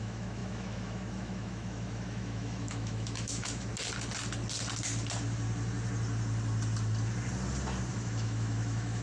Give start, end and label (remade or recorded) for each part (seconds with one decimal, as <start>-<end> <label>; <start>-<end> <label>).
0.0-3.7 remade; 3.7-7.9 recorded; 7.9-9.0 remade